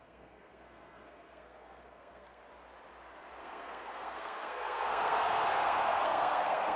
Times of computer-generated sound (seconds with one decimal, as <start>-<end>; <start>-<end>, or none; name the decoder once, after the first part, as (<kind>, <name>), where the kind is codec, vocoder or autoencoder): 0.0-2.4 (codec, SNAC); 3.4-6.8